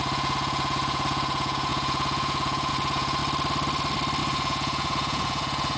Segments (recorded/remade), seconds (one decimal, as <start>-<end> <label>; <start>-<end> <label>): 0.0-3.2 remade; 3.2-4.2 recorded; 4.2-5.8 remade